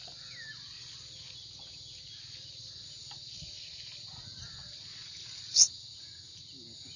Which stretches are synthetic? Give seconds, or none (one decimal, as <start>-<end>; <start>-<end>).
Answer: none